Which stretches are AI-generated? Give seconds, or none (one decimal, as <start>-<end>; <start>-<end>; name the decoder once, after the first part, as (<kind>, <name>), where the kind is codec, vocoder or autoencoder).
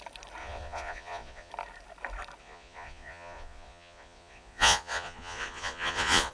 0.4-1.5 (vocoder, Vocos); 2.4-6.3